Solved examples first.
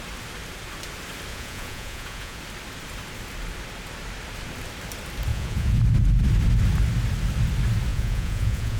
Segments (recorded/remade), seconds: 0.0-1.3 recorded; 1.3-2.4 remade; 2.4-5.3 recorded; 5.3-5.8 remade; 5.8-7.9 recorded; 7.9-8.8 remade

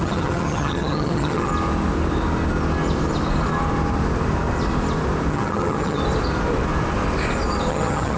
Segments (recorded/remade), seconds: 0.0-1.5 remade; 1.5-5.3 recorded; 5.3-6.0 remade; 6.0-7.7 recorded; 7.7-8.2 remade

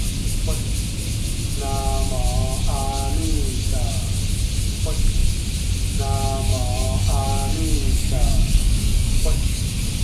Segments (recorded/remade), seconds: 0.0-6.5 recorded; 6.5-7.3 remade; 7.3-7.8 recorded; 7.8-9.6 remade; 9.6-10.0 recorded

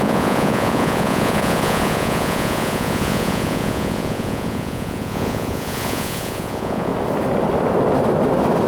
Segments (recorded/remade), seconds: 0.0-6.9 remade; 6.9-8.7 recorded

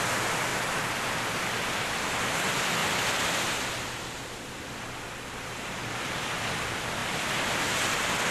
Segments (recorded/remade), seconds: 0.0-8.3 recorded